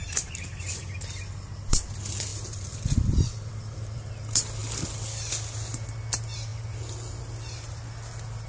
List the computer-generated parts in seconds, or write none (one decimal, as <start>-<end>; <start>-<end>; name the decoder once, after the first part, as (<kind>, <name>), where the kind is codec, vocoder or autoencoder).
2.3-4.1 (vocoder, BigVGAN v2)